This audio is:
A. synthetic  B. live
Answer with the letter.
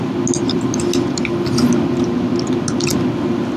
B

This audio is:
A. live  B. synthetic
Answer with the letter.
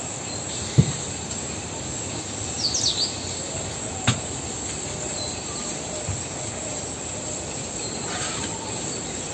A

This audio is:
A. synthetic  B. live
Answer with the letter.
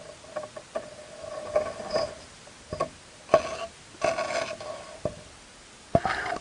B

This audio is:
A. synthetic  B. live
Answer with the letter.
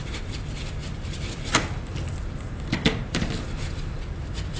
A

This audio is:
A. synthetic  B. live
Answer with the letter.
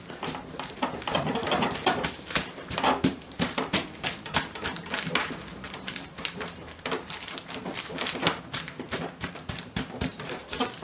A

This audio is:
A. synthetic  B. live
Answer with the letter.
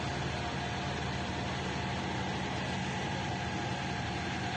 B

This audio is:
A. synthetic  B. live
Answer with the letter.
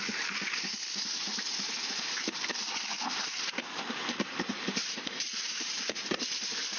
A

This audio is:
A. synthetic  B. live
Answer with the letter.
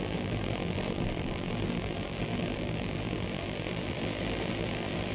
A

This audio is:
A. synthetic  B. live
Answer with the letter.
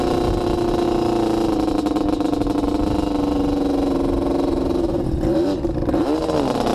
B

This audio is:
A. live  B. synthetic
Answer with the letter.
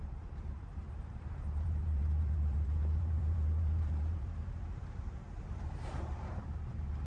B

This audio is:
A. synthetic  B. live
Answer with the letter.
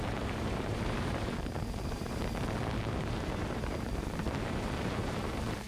A